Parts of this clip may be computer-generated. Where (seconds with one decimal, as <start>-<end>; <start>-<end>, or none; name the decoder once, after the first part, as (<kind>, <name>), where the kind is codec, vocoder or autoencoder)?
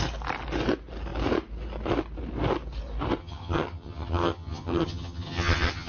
3.2-5.9 (vocoder, HiFi-GAN)